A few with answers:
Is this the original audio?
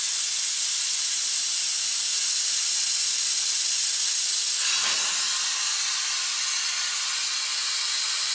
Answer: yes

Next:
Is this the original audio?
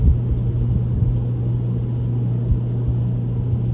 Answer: yes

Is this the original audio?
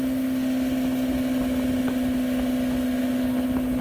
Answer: yes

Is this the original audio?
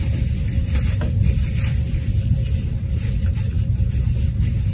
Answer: yes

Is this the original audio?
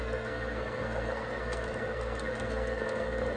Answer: no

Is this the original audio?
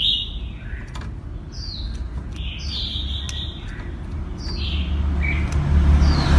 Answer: yes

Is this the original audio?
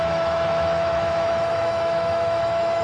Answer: no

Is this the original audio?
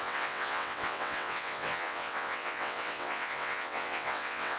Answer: no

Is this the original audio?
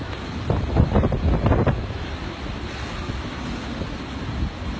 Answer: yes